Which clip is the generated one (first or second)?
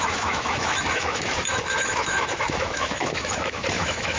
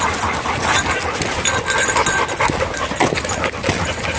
first